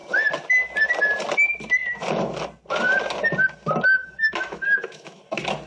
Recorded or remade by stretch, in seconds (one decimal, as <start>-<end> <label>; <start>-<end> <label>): 0.0-4.0 recorded; 4.0-5.2 remade; 5.2-5.7 recorded